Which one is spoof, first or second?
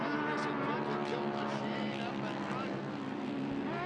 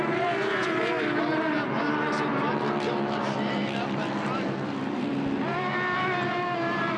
second